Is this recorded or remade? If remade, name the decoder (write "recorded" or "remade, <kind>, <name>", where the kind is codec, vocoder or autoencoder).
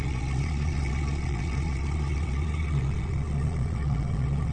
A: remade, vocoder, Vocos